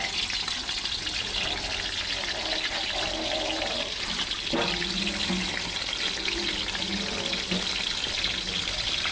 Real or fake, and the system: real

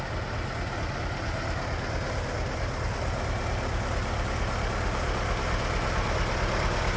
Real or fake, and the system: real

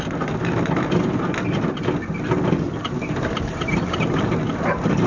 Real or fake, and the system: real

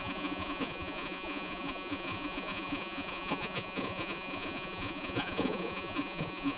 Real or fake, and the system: fake, vocoder, Vocos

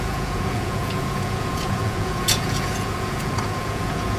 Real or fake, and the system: fake, vocoder, Vocos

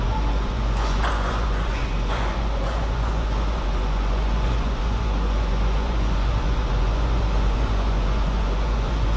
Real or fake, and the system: fake, vocoder, Vocos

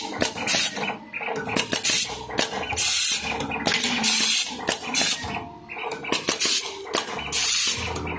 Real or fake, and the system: real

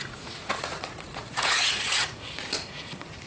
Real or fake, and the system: fake, vocoder, Vocos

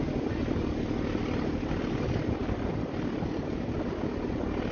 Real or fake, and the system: real